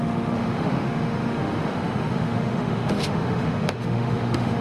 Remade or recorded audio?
remade